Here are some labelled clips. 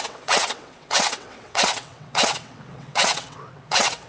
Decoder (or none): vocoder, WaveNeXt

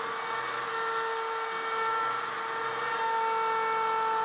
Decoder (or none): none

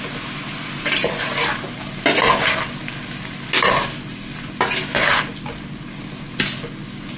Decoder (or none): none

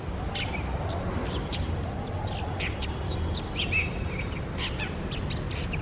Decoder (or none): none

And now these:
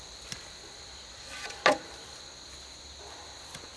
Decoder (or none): none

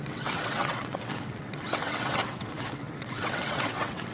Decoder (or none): vocoder, WaveNeXt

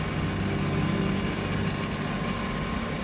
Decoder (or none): none